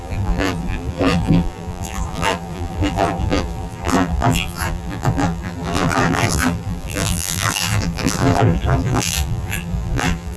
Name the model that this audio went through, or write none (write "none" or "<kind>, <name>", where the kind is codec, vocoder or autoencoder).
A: vocoder, BigVGAN v2